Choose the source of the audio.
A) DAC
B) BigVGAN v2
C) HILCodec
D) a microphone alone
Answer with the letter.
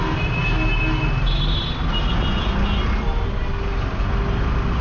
D